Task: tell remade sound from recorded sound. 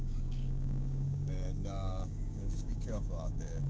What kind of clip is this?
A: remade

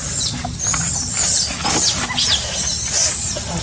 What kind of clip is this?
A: recorded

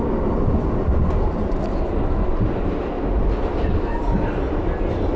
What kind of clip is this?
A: recorded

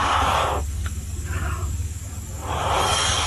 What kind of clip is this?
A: remade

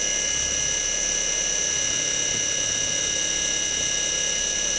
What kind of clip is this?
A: recorded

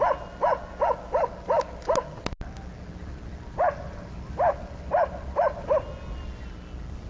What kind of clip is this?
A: recorded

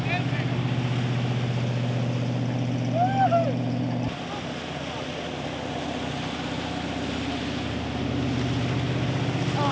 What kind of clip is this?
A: recorded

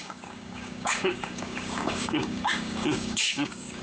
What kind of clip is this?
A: remade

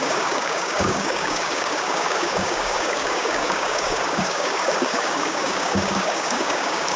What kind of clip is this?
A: remade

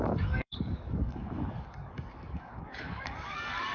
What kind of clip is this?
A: remade